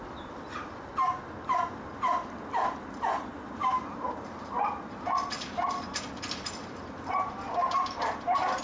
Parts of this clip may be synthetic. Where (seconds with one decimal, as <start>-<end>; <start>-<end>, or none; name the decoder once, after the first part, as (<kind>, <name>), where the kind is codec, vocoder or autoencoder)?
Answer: 0.0-0.9 (vocoder, BigVGAN v2); 1.7-8.6